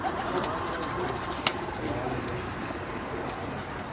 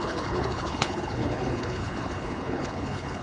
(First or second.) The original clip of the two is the first